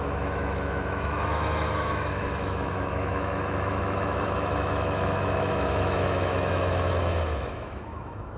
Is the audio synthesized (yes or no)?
yes